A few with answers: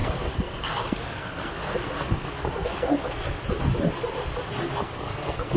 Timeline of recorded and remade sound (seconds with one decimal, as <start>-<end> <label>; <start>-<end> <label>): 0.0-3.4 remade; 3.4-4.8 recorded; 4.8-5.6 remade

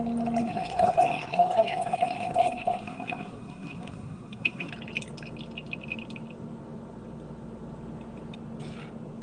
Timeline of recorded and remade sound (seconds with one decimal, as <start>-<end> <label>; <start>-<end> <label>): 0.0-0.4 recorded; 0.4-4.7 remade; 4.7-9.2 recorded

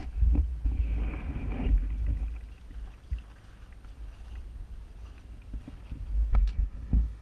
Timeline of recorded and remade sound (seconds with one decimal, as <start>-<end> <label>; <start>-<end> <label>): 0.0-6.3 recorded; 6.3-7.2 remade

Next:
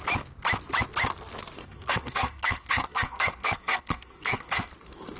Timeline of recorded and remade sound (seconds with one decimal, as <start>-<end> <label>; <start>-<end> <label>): 0.0-1.6 recorded; 1.6-4.7 remade; 4.7-5.2 recorded

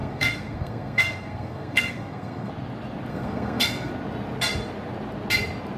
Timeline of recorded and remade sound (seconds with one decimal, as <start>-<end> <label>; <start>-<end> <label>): 0.0-2.5 remade; 2.5-3.1 recorded; 3.1-3.9 remade; 3.9-5.8 recorded

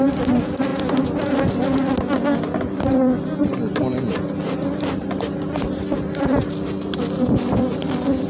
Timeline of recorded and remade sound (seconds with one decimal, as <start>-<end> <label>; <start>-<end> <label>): 0.0-8.3 recorded

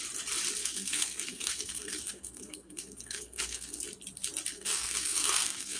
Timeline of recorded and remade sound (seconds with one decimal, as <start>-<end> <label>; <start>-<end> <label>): 0.0-0.6 recorded; 0.6-3.8 remade; 3.8-4.5 recorded; 4.5-5.8 remade